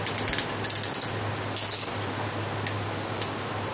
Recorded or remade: recorded